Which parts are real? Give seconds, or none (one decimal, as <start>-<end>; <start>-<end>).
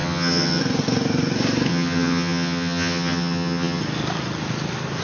0.6-1.7; 3.8-5.0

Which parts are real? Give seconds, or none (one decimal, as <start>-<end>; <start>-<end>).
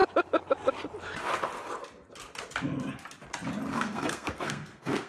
0.0-3.7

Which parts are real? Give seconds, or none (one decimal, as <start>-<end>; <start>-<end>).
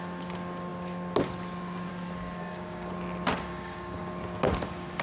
0.0-2.4; 2.9-3.5; 4.1-5.0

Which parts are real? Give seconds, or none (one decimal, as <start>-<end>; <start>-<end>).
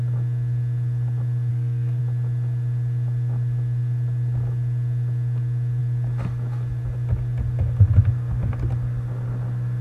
0.0-1.5; 2.0-9.8